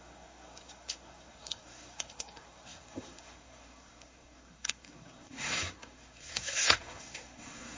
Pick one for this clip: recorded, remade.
remade